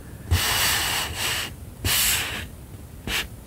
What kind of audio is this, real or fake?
real